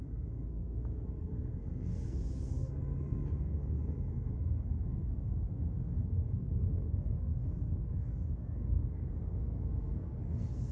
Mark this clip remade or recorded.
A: remade